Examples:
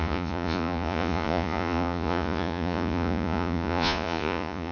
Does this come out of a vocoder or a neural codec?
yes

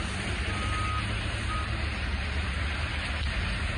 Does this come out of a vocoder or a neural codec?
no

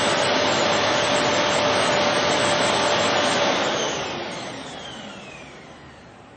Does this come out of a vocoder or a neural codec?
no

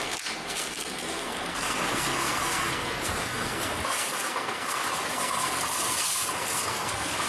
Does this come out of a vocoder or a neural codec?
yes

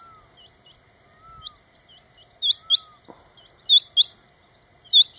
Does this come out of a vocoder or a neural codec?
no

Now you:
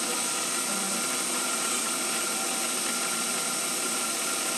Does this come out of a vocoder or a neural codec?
no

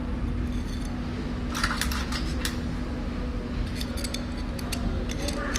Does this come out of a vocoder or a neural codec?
no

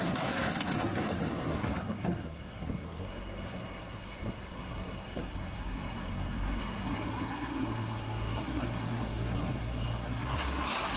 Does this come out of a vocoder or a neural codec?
yes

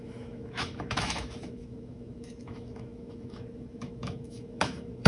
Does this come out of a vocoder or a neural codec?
yes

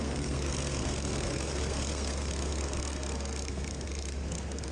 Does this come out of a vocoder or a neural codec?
yes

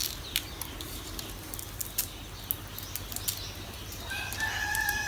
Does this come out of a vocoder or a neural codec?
no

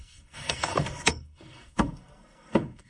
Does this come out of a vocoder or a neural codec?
yes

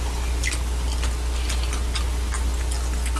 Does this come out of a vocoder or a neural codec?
no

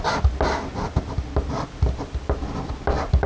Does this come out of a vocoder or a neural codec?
no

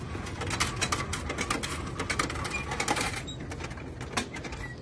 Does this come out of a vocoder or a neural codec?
no